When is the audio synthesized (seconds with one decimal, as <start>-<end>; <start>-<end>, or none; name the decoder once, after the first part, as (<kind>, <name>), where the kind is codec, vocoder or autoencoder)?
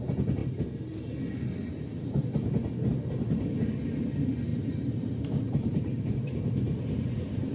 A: 4.5-7.5 (vocoder, BigVGAN v2)